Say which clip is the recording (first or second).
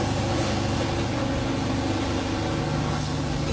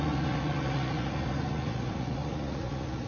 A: first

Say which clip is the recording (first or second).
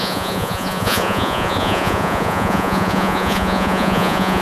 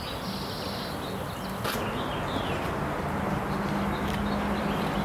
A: second